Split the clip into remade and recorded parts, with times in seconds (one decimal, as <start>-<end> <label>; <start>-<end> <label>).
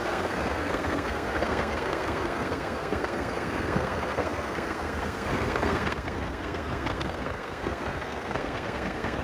0.0-9.2 remade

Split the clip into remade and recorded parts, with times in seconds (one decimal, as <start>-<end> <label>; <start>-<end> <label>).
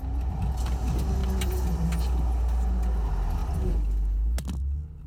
0.0-5.1 recorded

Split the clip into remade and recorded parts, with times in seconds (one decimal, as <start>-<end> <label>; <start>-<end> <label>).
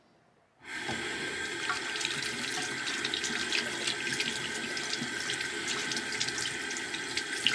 0.0-7.5 recorded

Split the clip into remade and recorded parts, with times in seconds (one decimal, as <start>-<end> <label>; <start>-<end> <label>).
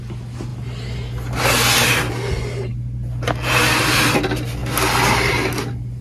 0.0-6.0 recorded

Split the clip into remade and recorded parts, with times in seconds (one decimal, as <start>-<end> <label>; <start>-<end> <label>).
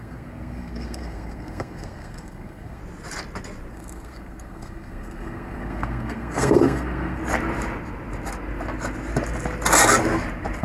0.0-2.8 remade; 2.8-3.7 recorded; 3.7-7.2 remade; 7.2-10.6 recorded